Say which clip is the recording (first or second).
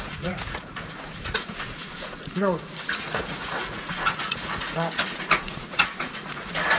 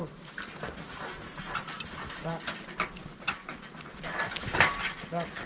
second